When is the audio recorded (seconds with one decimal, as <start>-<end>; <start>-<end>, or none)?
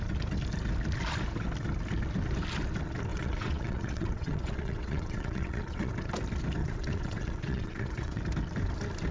0.0-3.1; 5.9-6.6; 8.2-9.1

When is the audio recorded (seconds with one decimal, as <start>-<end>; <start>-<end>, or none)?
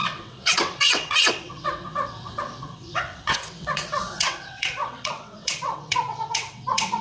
none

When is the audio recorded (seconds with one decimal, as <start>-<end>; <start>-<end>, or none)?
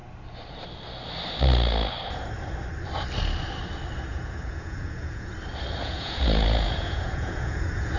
0.0-4.1; 5.3-5.8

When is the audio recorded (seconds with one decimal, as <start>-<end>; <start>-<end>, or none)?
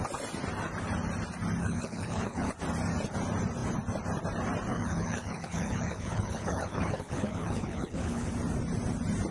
0.0-1.6; 2.5-4.7; 8.3-9.3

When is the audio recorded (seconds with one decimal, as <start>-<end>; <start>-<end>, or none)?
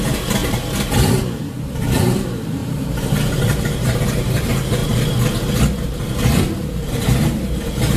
4.8-6.7